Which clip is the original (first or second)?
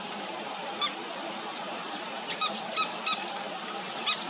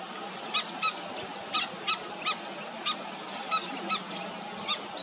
second